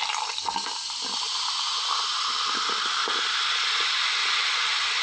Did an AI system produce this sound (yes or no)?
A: no